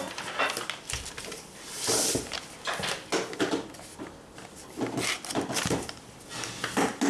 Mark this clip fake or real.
real